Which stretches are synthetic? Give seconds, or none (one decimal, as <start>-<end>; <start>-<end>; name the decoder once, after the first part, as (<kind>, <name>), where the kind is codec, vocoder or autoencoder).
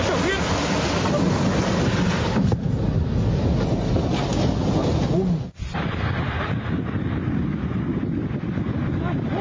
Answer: none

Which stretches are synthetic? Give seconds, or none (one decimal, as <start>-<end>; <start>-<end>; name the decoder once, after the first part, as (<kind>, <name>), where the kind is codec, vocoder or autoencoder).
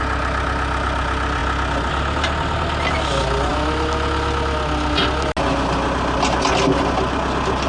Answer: none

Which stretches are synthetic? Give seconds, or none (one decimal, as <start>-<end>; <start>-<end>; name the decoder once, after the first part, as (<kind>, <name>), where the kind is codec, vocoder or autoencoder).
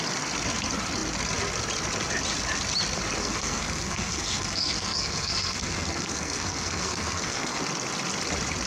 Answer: 3.2-7.6 (codec, SNAC)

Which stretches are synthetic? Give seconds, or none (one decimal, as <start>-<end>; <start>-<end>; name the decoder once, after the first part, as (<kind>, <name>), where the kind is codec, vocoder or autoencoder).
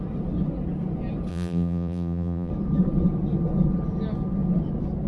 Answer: 1.3-2.5 (vocoder, BigVGAN v2)